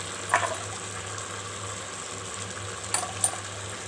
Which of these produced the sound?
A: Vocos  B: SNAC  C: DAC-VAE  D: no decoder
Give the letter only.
D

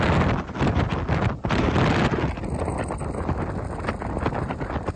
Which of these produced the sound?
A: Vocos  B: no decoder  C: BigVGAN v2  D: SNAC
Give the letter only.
B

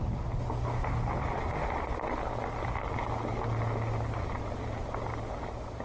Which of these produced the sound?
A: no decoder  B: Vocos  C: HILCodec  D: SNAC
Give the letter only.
A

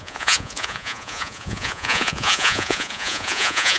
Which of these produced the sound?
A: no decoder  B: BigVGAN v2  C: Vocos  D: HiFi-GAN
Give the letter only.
C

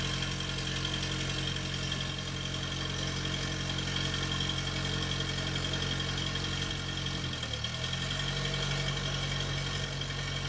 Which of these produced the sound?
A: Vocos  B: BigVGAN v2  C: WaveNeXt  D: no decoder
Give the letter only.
D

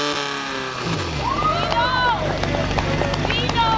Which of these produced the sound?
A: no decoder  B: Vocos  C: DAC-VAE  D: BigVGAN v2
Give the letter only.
A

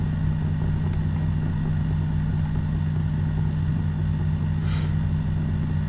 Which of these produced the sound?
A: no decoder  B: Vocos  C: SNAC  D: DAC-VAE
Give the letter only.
A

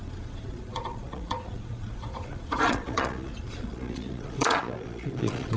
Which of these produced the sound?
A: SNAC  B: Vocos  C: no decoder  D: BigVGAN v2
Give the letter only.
B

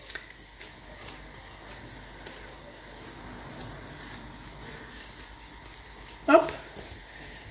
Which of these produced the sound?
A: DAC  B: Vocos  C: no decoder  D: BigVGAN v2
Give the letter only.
C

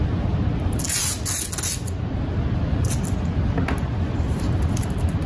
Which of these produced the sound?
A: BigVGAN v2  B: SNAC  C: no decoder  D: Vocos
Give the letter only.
C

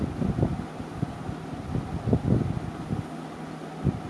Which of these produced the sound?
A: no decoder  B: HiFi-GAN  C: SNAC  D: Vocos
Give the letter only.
A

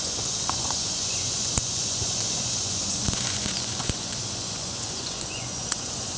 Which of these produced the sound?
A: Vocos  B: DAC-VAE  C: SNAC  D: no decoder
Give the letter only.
A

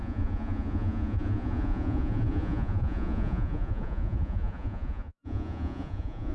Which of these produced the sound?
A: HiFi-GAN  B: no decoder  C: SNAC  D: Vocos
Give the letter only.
D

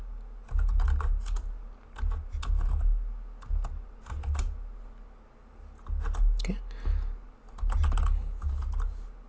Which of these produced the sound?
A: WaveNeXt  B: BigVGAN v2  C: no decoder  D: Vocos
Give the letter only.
C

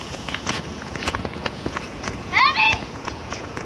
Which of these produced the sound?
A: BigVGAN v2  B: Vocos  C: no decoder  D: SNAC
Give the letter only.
B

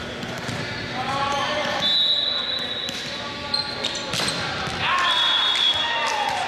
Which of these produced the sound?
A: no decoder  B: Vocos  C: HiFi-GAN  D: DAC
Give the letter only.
A